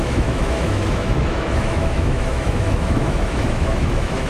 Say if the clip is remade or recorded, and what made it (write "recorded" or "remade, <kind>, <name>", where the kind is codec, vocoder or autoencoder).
remade, autoencoder, DAC-VAE